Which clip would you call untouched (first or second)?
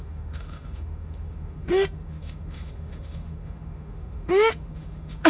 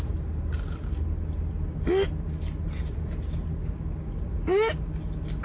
second